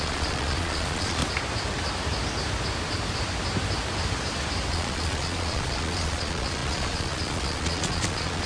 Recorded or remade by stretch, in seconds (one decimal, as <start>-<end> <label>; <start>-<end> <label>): 0.0-1.2 remade; 1.2-4.7 recorded; 4.7-8.5 remade